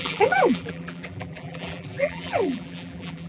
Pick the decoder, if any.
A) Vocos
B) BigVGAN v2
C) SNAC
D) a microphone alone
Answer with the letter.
B